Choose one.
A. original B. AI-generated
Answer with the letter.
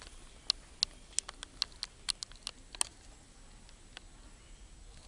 A